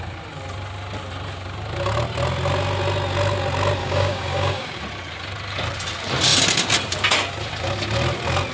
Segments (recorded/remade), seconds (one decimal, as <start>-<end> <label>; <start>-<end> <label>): 0.0-3.8 recorded; 3.8-4.8 remade; 4.8-8.5 recorded